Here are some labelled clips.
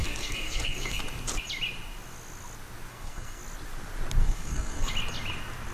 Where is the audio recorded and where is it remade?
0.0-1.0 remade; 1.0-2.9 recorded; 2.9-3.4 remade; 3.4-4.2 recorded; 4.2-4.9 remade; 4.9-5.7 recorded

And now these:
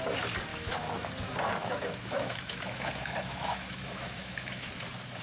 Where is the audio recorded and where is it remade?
0.0-0.5 recorded; 0.5-1.1 remade; 1.1-1.6 recorded; 1.6-4.7 remade; 4.7-5.2 recorded

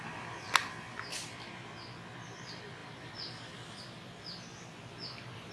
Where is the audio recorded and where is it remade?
0.0-2.8 recorded; 2.8-3.8 remade; 3.8-5.5 recorded

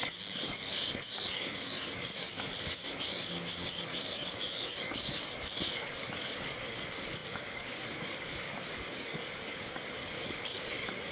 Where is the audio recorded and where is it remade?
0.0-11.1 remade

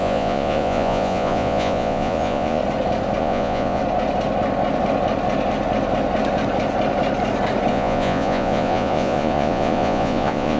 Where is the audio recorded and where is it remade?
0.0-2.6 remade; 2.6-3.2 recorded; 3.2-3.8 remade; 3.8-7.7 recorded; 7.7-10.6 remade

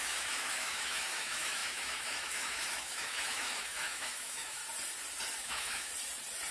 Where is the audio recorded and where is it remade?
0.0-4.6 remade; 4.6-5.4 recorded; 5.4-5.9 remade; 5.9-6.5 recorded

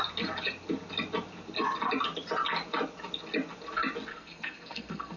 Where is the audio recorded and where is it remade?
0.0-4.1 recorded; 4.1-5.2 remade